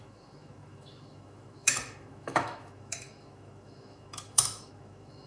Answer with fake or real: fake